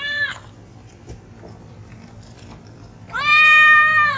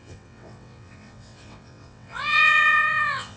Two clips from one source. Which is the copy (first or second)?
second